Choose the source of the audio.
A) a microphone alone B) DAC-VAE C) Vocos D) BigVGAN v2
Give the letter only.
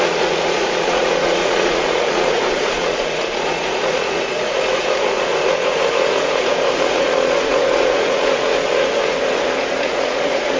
C